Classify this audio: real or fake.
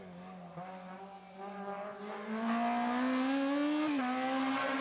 real